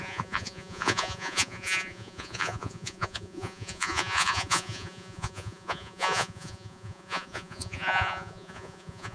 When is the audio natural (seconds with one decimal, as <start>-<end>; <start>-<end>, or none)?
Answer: none